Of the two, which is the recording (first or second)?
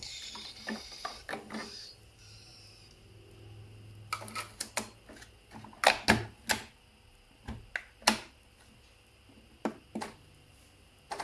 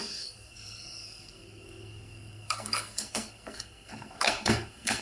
first